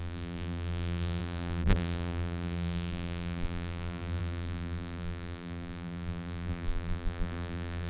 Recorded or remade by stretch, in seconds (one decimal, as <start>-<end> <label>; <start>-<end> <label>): 0.0-7.9 remade